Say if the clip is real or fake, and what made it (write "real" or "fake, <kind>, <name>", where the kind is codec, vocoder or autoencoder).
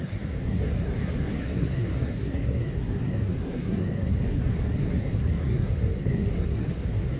fake, codec, SNAC